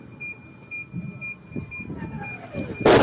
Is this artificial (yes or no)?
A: no